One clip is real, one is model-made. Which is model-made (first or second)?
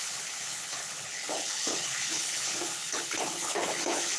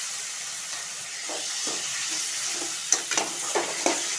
first